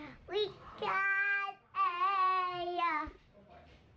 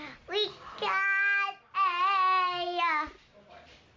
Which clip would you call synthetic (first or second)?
first